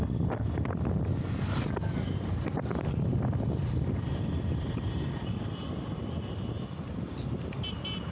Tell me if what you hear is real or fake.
real